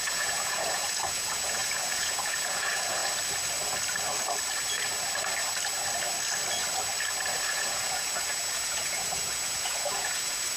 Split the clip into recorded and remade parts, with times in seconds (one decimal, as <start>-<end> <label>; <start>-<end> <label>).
0.0-3.0 remade; 3.0-7.5 recorded; 7.5-10.6 remade